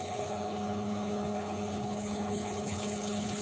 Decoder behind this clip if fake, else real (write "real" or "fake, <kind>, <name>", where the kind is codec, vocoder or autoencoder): fake, codec, HILCodec